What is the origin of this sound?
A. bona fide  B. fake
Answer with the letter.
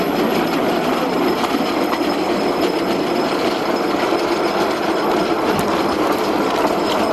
A